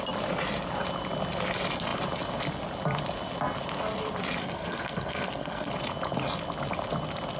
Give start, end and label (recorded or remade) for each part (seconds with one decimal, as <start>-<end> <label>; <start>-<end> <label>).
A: 0.0-4.4 recorded; 4.4-5.7 remade; 5.7-7.4 recorded